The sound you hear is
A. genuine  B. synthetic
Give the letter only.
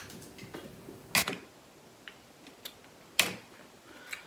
A